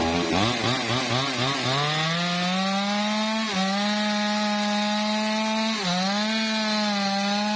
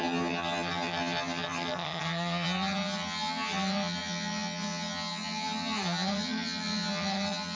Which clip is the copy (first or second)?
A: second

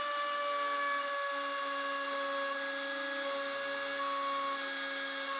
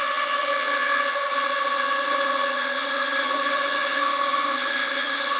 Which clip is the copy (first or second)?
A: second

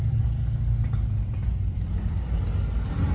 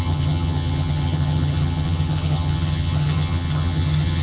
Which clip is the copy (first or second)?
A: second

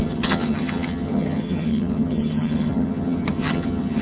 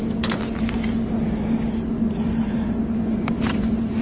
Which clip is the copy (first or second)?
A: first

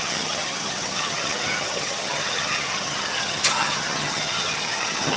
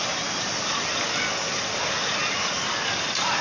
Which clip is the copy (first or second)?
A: first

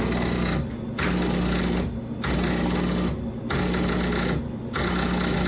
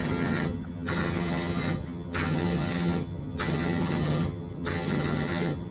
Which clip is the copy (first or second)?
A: second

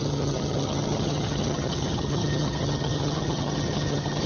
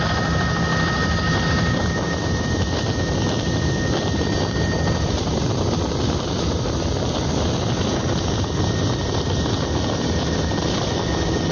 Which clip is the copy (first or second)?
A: first